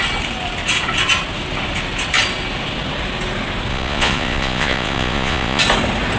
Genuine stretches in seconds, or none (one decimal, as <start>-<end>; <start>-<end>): 0.0-3.7; 5.6-6.2